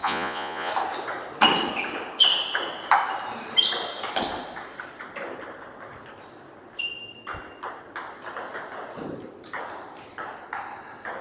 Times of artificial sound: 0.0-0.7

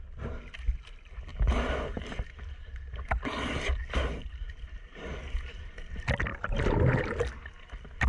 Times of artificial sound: 1.3-5.7

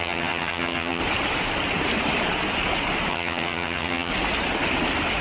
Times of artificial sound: 0.0-1.0; 3.1-4.1